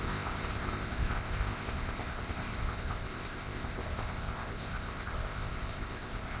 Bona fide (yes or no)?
no